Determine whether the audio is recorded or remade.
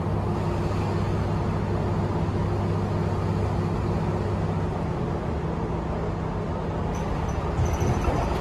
recorded